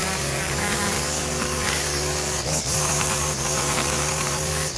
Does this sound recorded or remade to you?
remade